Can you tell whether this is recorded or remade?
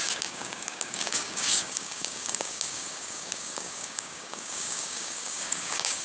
remade